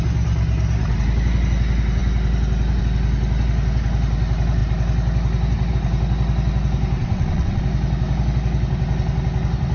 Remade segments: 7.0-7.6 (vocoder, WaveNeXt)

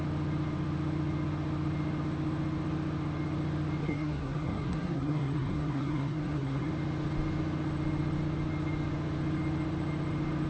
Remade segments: 3.8-6.7 (codec, SNAC)

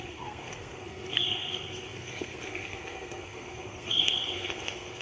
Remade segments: 0.0-5.0 (codec, SNAC)

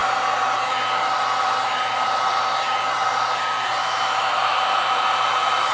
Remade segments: 0.0-3.0 (vocoder, BigVGAN v2); 4.2-5.7